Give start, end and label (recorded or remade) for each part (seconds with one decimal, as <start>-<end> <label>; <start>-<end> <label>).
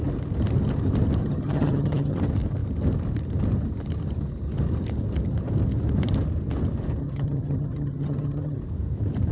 0.0-1.2 recorded; 1.2-2.2 remade; 2.2-7.0 recorded; 7.0-8.6 remade; 8.6-9.3 recorded